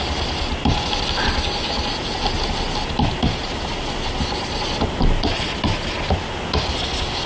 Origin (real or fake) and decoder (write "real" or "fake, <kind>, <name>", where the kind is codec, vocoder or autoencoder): real